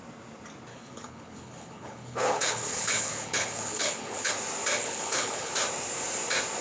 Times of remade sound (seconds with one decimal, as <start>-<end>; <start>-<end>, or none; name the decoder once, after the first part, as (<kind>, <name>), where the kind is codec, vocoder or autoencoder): 0.7-4.3 (codec, HILCodec); 4.8-5.5